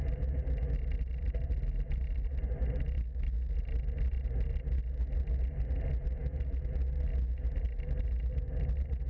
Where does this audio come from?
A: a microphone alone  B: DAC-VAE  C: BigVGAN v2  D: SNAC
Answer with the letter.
A